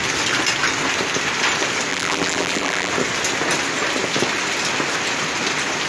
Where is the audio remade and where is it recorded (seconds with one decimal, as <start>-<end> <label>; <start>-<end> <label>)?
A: 0.0-1.9 recorded; 1.9-2.9 remade; 2.9-5.9 recorded